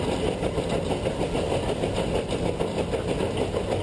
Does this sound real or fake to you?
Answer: real